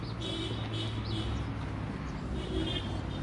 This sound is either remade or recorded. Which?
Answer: recorded